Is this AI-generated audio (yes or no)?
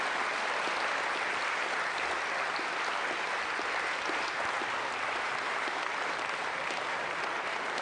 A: no